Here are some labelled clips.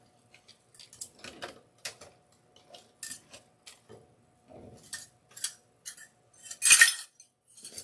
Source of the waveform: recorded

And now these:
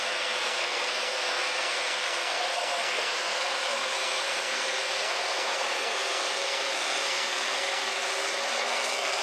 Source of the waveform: remade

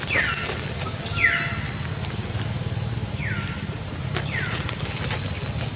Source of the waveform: recorded